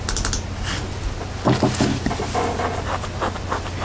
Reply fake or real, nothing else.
real